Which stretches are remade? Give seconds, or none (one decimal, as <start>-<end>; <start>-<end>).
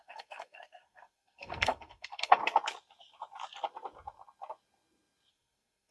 0.0-2.4; 5.3-5.9